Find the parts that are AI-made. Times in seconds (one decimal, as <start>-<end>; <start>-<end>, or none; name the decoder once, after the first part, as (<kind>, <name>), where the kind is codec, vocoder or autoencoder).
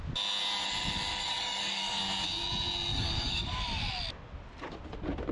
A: 1.1-2.0 (codec, DAC); 2.9-3.5